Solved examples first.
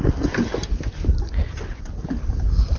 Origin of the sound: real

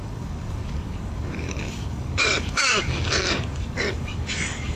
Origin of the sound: fake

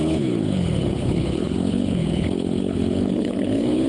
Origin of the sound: fake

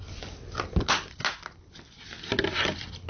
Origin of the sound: real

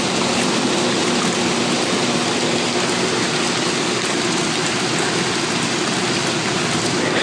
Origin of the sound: real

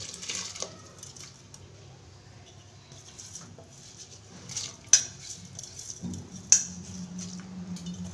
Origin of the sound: real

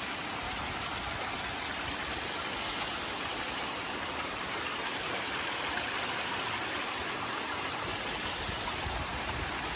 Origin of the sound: real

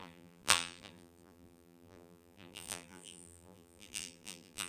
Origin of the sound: fake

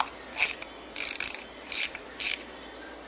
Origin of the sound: fake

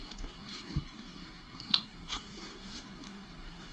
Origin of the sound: fake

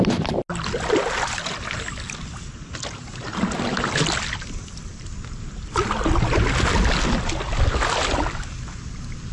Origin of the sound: real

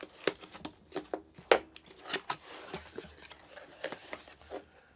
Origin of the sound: real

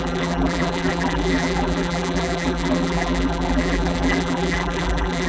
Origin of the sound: fake